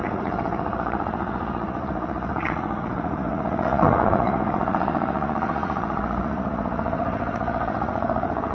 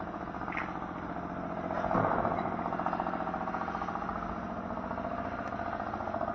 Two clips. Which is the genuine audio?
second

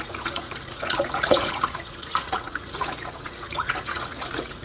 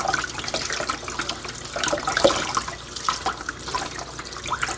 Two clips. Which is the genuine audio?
second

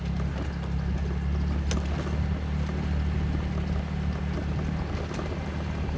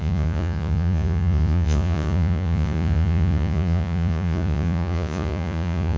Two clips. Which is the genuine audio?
first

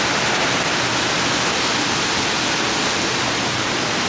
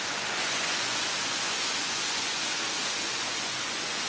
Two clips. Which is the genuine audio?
first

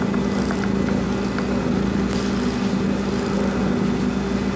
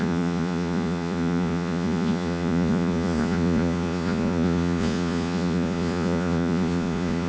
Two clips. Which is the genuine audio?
first